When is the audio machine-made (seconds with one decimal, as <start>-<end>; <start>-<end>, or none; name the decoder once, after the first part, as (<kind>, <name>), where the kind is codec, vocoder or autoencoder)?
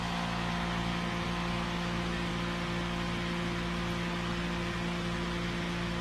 0.0-0.9 (autoencoder, DAC-VAE); 1.5-2.3